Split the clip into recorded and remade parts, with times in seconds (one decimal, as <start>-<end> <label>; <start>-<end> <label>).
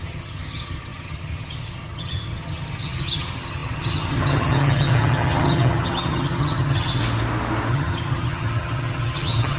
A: 0.0-7.0 remade; 7.0-7.7 recorded; 7.7-9.6 remade